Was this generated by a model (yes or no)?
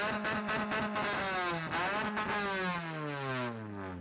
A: no